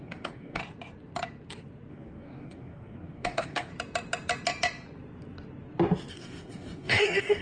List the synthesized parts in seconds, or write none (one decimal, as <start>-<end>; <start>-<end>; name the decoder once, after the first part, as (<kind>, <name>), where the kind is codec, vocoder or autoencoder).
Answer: 0.0-0.6 (codec, DAC); 1.9-3.7; 6.1-7.4